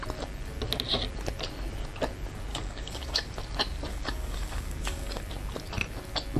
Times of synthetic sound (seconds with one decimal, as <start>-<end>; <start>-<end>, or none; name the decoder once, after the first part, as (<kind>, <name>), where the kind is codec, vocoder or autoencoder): 2.5-3.3 (codec, DAC); 3.9-5.2